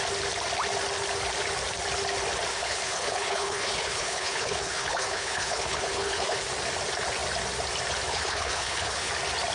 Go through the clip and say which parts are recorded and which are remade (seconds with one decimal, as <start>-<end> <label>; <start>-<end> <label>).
0.0-2.5 recorded; 2.5-6.4 remade; 6.4-8.1 recorded; 8.1-9.1 remade; 9.1-9.5 recorded